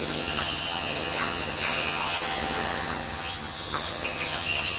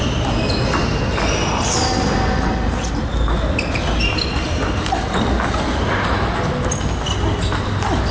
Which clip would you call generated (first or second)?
first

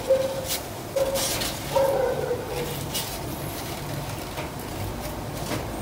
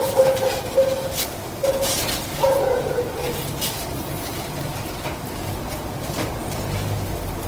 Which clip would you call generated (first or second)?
second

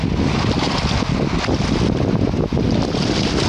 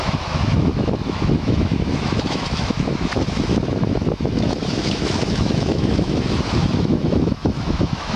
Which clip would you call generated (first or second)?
second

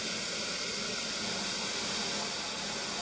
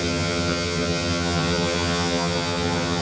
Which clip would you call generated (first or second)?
second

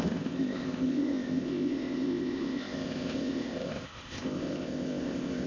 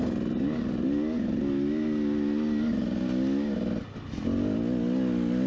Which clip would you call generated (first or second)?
first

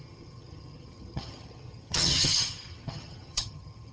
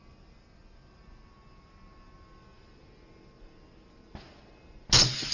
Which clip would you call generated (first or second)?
first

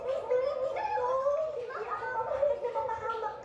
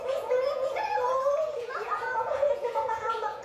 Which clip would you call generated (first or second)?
second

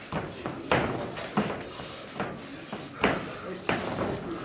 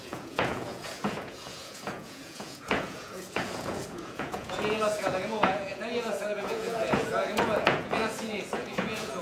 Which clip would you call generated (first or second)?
second